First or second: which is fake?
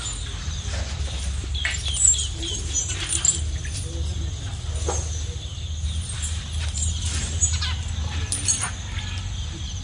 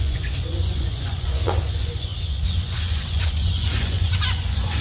second